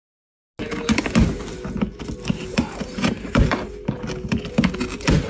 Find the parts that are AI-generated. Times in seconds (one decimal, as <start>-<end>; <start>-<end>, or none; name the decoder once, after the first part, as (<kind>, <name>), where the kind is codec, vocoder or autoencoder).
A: 2.4-3.7 (vocoder, BigVGAN v2)